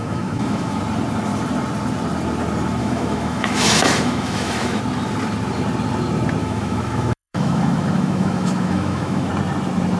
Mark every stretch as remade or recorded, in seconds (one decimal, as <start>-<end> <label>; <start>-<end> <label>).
0.0-0.8 remade; 0.8-2.8 recorded; 2.8-4.8 remade; 4.8-6.4 recorded; 6.4-9.3 remade; 9.3-10.0 recorded

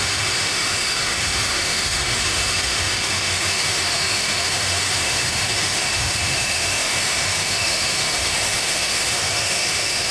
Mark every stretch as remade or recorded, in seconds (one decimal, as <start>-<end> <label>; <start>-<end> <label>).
0.0-10.1 remade

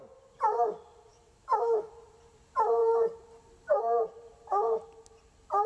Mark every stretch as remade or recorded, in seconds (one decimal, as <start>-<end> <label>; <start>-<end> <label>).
0.0-1.1 recorded; 1.1-1.9 remade; 1.9-5.7 recorded

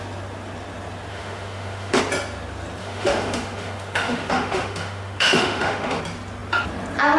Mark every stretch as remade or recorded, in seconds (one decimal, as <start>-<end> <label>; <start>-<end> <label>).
0.0-1.1 recorded; 1.1-2.0 remade; 2.0-2.8 recorded; 2.8-6.0 remade; 6.0-7.2 recorded